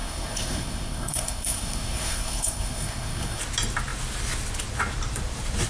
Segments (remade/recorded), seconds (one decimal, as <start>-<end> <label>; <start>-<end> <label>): 0.0-3.4 remade; 3.4-5.7 recorded